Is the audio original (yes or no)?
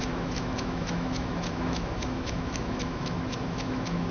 no